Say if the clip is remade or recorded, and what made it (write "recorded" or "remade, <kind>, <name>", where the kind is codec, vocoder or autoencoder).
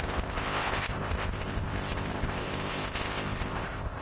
remade, codec, ZipCodec